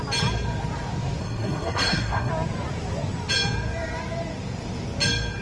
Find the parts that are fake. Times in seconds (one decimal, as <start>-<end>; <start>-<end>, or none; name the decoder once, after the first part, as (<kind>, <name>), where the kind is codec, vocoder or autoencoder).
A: 1.2-2.3 (codec, SNAC)